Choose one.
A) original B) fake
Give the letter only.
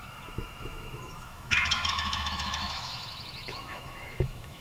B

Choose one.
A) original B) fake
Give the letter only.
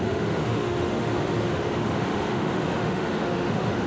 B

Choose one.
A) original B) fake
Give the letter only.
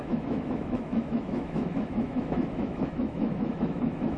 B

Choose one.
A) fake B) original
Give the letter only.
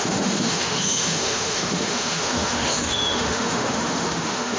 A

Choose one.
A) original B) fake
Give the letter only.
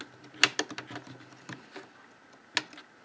A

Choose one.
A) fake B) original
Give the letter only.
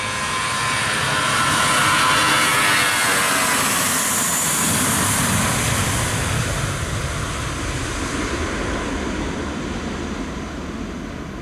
B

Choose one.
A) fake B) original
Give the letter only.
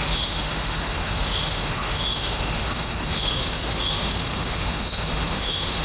A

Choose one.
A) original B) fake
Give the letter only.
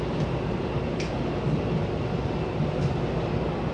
A